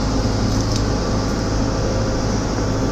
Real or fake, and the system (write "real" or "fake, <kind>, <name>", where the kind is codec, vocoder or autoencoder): real